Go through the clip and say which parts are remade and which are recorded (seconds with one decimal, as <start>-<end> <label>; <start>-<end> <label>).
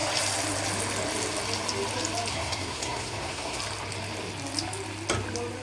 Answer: 0.0-2.3 recorded; 2.3-3.6 remade; 3.6-5.6 recorded